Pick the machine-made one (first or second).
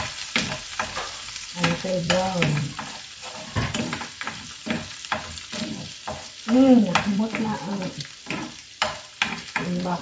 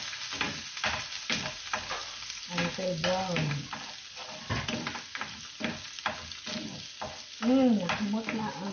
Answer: first